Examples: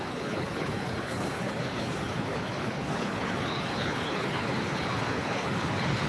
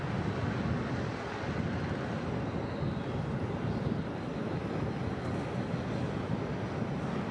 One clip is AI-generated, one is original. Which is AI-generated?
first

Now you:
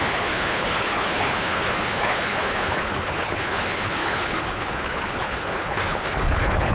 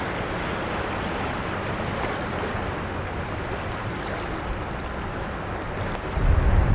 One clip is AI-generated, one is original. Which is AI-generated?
first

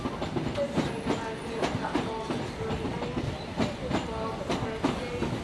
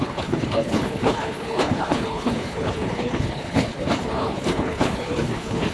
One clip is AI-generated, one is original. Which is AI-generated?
second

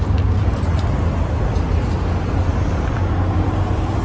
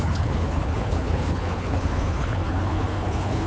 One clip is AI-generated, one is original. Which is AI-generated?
second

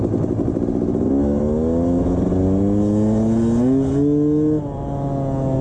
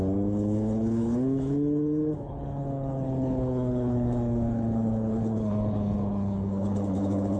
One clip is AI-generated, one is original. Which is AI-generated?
second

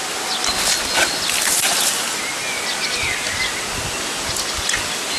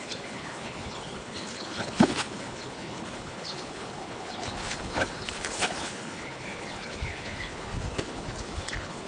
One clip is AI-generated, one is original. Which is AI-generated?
second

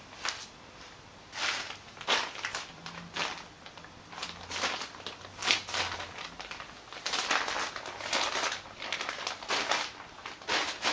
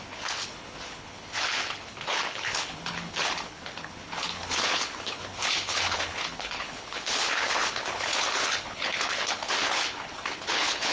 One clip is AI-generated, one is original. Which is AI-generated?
second